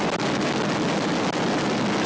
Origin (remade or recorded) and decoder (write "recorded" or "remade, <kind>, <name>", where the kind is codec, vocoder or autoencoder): recorded